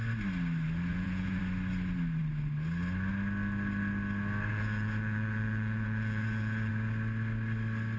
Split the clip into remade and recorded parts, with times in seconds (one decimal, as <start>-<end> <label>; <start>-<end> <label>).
0.0-0.9 recorded; 0.9-1.4 remade; 1.4-4.5 recorded; 4.5-6.7 remade; 6.7-8.0 recorded